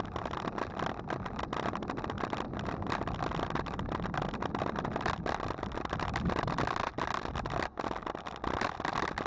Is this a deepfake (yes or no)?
no